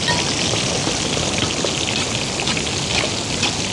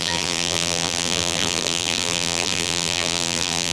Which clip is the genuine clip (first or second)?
first